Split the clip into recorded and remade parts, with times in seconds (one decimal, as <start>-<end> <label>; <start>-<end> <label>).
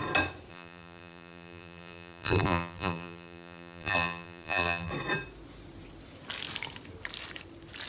0.0-0.5 recorded; 0.5-4.9 remade; 4.9-7.9 recorded